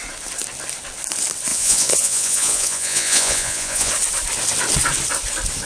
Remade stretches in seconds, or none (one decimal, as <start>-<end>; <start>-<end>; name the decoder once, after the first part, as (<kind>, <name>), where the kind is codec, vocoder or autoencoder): 1.5-3.9 (vocoder, Vocos)